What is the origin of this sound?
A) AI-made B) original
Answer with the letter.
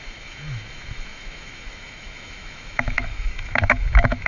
A